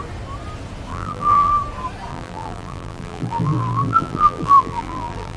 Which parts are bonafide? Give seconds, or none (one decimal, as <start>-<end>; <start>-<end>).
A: 0.0-0.9; 1.5-2.1